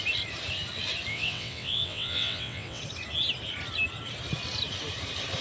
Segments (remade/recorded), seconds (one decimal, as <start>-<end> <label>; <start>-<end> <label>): 0.0-1.1 recorded; 1.1-2.8 remade; 2.8-5.4 recorded

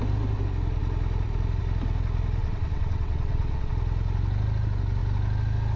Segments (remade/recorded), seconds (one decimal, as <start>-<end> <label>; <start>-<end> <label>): 0.0-2.4 recorded; 2.4-3.7 remade; 3.7-5.8 recorded